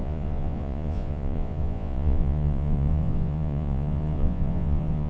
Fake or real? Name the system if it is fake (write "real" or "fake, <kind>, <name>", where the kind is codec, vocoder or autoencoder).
fake, vocoder, Vocos